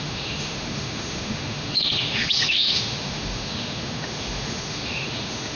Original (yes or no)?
no